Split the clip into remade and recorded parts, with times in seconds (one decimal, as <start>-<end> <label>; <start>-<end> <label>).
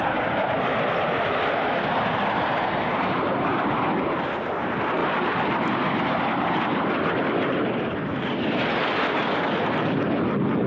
0.0-10.7 recorded